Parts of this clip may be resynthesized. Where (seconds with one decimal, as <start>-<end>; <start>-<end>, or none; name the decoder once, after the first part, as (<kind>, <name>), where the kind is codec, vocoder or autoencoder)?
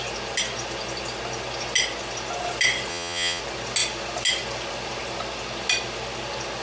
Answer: 2.9-3.4 (vocoder, Vocos)